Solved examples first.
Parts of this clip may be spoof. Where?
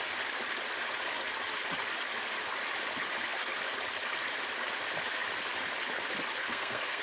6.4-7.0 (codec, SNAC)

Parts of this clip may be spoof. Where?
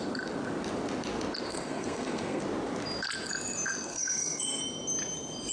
1.5-2.4 (codec, SNAC); 3.9-4.6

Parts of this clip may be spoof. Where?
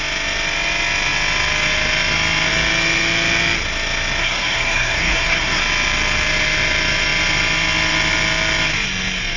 4.2-5.6 (codec, SNAC)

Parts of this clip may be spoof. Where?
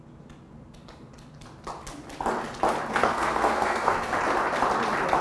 2.9-4.1 (codec, SNAC)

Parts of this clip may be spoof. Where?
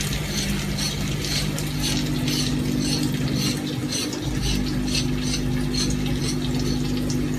none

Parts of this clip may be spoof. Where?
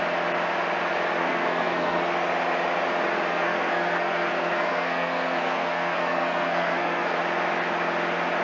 1.2-2.0 (codec, SNAC); 3.3-7.2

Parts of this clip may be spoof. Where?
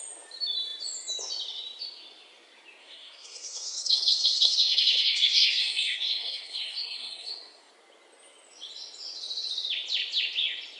2.8-7.7 (codec, SNAC)